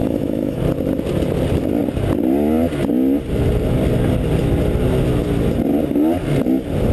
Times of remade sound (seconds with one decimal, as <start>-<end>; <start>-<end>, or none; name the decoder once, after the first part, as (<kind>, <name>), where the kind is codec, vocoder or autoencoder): 0.0-0.6 (autoencoder, DAC-VAE)